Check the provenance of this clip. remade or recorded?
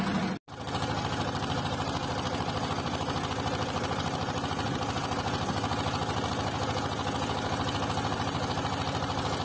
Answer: recorded